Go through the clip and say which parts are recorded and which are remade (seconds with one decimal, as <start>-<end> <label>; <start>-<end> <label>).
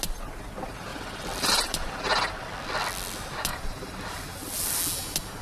0.0-0.9 recorded; 0.9-1.5 remade; 1.5-3.5 recorded; 3.5-4.8 remade; 4.8-5.4 recorded